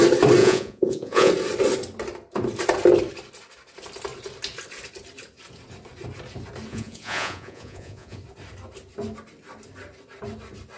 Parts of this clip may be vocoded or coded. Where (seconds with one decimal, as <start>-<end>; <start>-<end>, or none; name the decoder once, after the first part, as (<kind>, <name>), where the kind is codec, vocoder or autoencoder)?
0.4-1.3 (vocoder, Vocos); 6.7-8.2